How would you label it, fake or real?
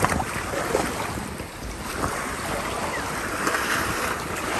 real